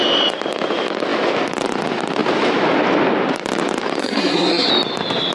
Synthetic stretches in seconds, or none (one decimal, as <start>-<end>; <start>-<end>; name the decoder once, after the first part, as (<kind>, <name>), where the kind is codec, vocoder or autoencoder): 4.0-4.7 (codec, SNAC)